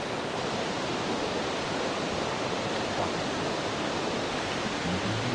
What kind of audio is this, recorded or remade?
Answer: recorded